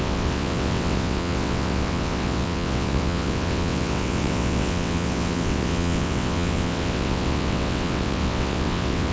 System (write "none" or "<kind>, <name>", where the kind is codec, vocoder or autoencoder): vocoder, WaveNeXt